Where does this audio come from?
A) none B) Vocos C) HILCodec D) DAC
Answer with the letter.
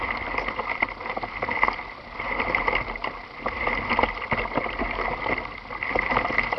A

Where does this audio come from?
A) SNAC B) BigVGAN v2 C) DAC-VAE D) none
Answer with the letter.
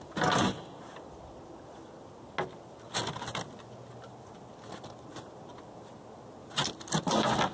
D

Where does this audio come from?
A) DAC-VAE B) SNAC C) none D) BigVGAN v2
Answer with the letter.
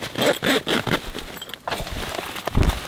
C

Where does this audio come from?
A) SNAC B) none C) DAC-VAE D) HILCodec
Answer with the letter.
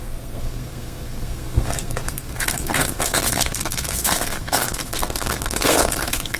A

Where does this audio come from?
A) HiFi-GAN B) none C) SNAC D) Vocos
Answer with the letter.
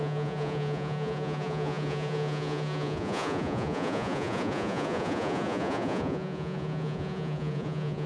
D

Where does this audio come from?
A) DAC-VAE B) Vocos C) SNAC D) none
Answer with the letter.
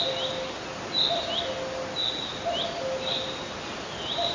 D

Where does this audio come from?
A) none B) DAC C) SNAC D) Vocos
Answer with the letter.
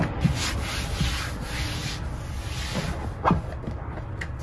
A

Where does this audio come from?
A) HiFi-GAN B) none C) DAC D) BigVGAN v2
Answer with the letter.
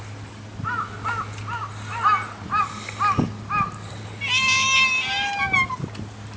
B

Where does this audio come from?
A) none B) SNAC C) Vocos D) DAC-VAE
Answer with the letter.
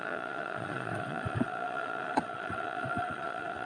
C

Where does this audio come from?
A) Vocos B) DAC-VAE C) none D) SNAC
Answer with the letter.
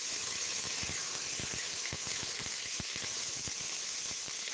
B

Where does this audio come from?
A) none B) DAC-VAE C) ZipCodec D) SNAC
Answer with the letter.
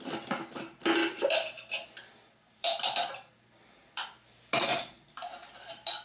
A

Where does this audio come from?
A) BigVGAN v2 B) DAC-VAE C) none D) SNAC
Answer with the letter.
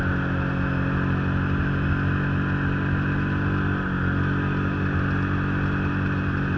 C